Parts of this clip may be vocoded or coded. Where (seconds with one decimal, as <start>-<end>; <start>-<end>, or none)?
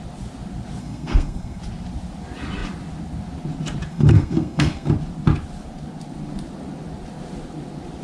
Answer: 0.8-1.6; 3.9-4.9